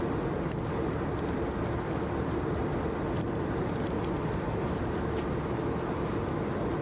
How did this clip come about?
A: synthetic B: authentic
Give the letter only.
B